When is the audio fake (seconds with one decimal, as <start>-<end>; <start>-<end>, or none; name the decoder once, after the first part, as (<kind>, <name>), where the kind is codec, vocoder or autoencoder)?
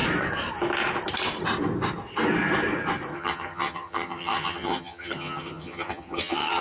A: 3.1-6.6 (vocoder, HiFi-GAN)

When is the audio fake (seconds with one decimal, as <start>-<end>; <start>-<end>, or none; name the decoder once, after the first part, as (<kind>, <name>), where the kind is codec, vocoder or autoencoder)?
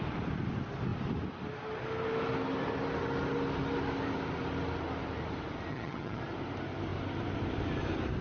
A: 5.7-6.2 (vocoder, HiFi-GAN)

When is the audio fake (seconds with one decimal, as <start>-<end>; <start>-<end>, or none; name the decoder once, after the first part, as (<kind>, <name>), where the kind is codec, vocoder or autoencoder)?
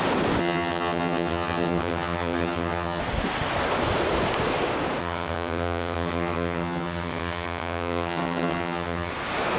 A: 0.4-3.0 (vocoder, HiFi-GAN); 5.0-9.1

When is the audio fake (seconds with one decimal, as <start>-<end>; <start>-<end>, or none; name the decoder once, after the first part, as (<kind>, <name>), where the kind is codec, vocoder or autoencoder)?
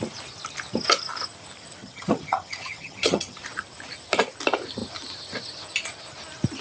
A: 1.8-3.4 (vocoder, HiFi-GAN)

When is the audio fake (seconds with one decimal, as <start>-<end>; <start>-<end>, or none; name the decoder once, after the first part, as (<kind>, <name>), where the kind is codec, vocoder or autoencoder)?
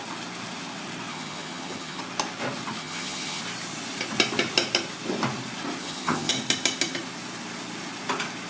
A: 1.1-2.0 (vocoder, HiFi-GAN); 2.8-3.4; 5.8-6.3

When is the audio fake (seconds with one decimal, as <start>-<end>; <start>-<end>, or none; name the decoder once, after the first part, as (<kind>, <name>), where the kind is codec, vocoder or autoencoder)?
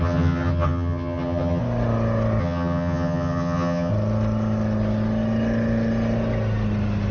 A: 0.0-1.6 (vocoder, HiFi-GAN); 2.4-3.9